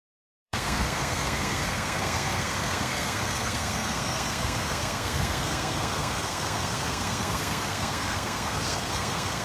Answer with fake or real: fake